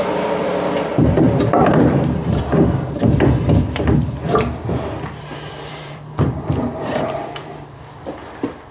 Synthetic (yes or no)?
yes